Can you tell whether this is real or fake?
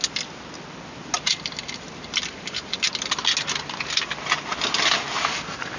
real